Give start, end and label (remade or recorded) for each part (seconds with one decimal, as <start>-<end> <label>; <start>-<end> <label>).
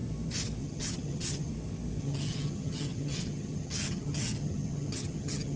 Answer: 0.0-0.6 recorded; 0.6-1.5 remade; 1.5-2.0 recorded; 2.0-5.6 remade